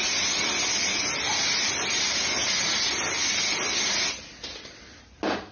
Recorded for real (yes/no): yes